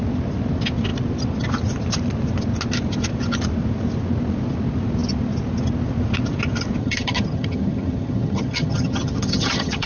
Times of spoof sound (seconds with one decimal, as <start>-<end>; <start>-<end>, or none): 6.8-9.9